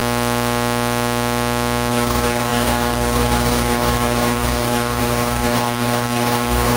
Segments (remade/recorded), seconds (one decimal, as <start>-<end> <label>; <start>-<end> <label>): 0.0-1.9 recorded; 1.9-6.8 remade

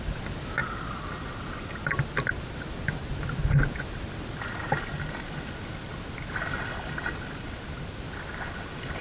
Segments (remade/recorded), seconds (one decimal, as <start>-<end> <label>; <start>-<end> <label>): 0.0-9.0 recorded

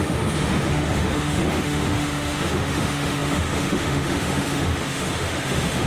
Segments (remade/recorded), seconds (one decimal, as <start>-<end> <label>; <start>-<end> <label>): 0.0-5.9 remade

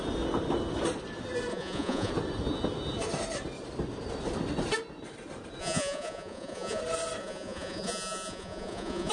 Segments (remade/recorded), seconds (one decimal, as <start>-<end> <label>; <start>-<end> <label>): 0.0-1.5 recorded; 1.5-2.1 remade; 2.1-5.6 recorded; 5.6-6.8 remade; 6.8-7.2 recorded; 7.2-9.1 remade

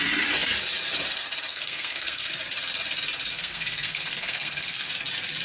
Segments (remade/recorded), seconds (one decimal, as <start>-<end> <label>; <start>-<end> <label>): 0.0-1.5 recorded; 1.5-2.3 remade; 2.3-3.3 recorded; 3.3-4.9 remade; 4.9-5.4 recorded

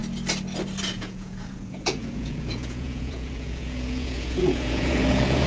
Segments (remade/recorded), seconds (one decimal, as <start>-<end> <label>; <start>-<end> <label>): 0.0-0.9 recorded; 0.9-5.5 remade

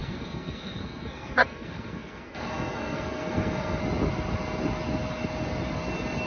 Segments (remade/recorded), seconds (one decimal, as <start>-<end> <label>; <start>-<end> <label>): 0.0-3.8 remade; 3.8-6.3 recorded